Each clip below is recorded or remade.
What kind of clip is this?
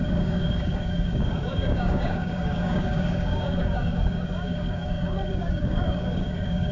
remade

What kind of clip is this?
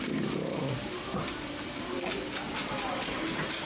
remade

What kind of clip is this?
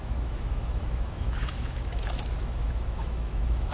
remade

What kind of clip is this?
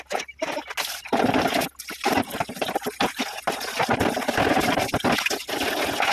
recorded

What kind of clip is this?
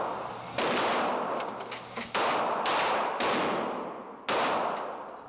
recorded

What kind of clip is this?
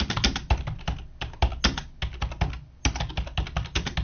recorded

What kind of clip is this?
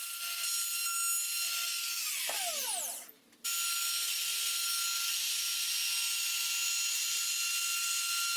recorded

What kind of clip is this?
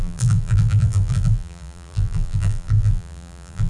remade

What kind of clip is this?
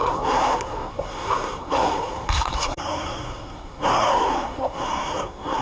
remade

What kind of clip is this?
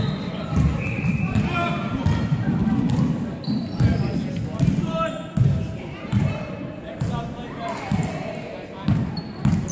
recorded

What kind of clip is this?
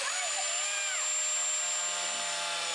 recorded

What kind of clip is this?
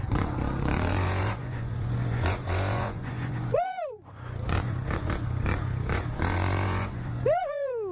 remade